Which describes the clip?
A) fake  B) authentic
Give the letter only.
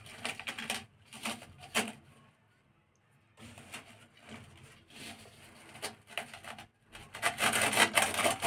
B